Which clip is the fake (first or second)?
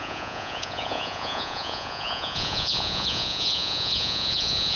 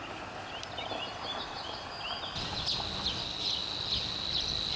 first